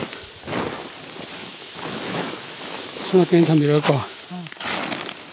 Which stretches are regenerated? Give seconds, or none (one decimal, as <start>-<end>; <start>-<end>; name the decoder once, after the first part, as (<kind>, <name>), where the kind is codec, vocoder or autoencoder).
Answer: 1.4-4.1 (autoencoder, DAC-VAE)